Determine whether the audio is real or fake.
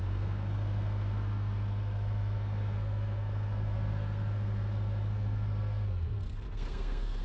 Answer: fake